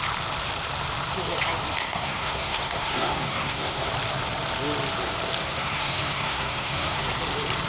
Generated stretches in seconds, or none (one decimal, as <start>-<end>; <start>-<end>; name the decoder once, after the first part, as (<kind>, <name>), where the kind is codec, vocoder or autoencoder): 1.8-3.9 (codec, SNAC); 5.4-7.1